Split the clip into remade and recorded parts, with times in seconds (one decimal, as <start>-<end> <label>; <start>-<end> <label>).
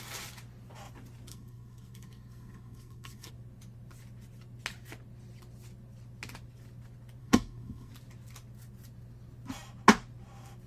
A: 0.0-1.3 recorded; 1.3-3.3 remade; 3.3-7.2 recorded; 7.2-7.9 remade; 7.9-10.7 recorded